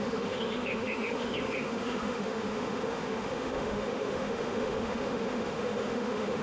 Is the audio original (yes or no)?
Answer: no